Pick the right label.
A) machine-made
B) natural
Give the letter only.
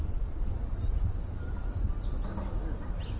B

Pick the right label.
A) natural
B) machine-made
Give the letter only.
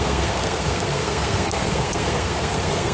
B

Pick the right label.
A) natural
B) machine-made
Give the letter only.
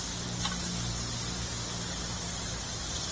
A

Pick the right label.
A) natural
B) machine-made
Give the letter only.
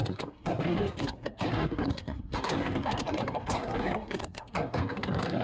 B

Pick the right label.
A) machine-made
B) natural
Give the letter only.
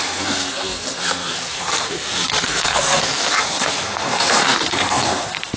A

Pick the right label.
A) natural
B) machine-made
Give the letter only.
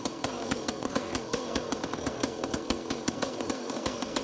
B